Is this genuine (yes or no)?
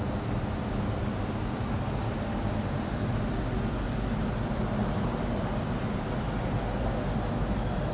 yes